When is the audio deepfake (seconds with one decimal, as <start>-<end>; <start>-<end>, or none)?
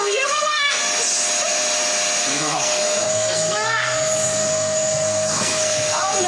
0.0-0.8; 2.2-6.3